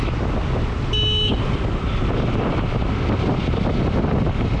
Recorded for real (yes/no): yes